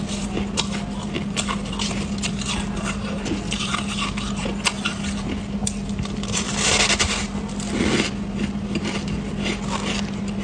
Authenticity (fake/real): real